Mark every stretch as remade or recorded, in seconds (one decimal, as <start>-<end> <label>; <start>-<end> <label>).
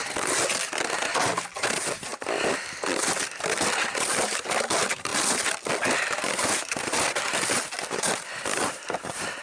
0.0-9.4 recorded